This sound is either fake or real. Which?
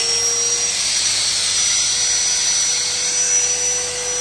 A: real